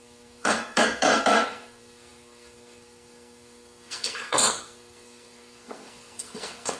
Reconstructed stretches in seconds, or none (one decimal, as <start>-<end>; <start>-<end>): 0.0-6.8